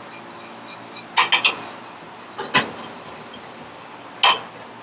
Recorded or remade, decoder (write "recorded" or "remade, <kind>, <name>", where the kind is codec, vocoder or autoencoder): recorded